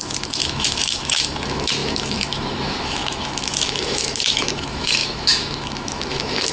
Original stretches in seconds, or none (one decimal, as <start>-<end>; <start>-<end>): none